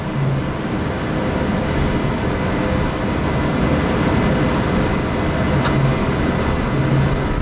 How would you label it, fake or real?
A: real